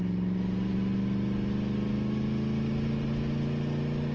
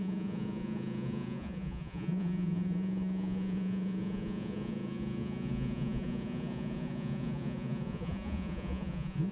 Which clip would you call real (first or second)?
first